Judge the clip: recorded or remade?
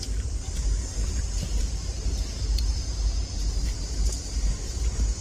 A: remade